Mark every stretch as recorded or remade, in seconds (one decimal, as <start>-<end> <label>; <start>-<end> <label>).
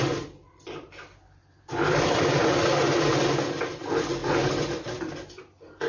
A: 0.0-0.4 recorded; 0.4-3.2 remade; 3.2-5.9 recorded